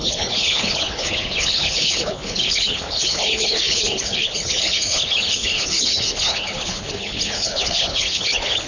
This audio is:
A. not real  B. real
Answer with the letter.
A